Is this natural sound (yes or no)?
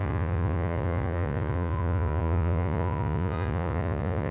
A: no